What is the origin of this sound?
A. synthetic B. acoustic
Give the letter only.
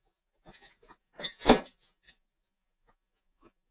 A